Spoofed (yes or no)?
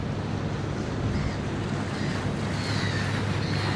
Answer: no